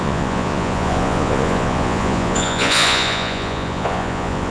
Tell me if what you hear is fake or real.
fake